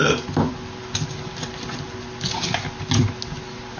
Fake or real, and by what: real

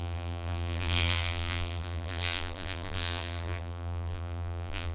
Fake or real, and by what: fake, vocoder, BigVGAN v2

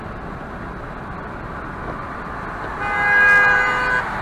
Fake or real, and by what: real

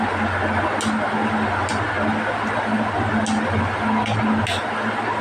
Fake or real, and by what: real